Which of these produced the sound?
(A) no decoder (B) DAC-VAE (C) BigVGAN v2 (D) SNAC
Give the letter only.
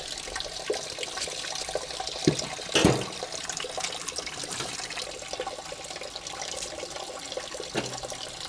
A